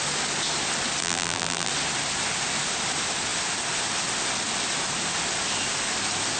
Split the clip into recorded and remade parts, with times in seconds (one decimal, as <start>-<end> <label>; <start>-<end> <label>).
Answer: 0.0-1.0 recorded; 1.0-1.7 remade; 1.7-6.4 recorded